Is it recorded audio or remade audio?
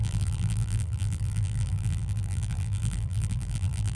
remade